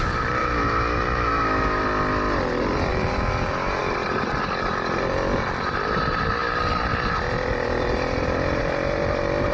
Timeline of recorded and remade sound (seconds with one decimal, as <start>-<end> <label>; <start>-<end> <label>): 0.0-0.4 recorded; 0.4-1.8 remade; 1.8-2.9 recorded; 2.9-3.8 remade; 3.8-9.5 recorded